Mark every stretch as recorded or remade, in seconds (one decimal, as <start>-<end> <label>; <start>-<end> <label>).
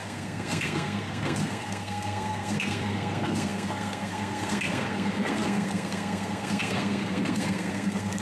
0.0-8.2 remade